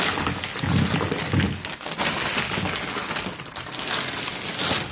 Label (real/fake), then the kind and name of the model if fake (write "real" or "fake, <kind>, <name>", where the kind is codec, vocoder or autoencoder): real